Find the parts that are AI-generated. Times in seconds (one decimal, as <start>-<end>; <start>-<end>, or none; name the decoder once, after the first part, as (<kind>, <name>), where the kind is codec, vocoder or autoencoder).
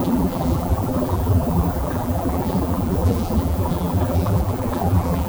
0.0-5.3 (vocoder, BigVGAN v2)